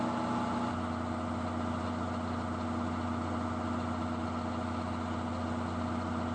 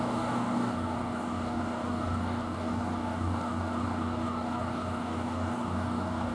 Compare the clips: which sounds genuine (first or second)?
first